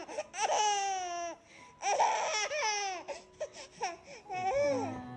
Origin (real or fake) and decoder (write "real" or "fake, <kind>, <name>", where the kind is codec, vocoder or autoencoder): real